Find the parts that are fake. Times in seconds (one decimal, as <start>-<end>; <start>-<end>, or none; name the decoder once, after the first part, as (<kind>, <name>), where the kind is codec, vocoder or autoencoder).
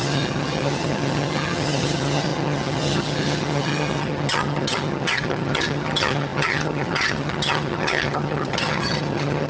0.0-9.5 (vocoder, HiFi-GAN)